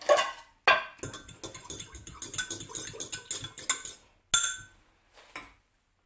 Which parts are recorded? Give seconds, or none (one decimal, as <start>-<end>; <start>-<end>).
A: 0.0-6.1